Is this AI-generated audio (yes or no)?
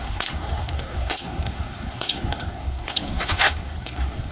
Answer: yes